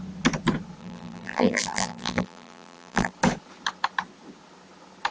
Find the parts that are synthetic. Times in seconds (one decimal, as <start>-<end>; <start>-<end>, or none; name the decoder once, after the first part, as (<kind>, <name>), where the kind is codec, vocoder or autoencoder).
0.8-3.1 (vocoder, BigVGAN v2)